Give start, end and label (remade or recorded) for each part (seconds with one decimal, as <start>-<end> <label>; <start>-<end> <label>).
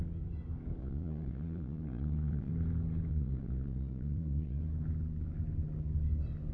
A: 0.0-0.8 recorded; 0.8-2.5 remade; 2.5-3.1 recorded; 3.1-4.6 remade; 4.6-6.5 recorded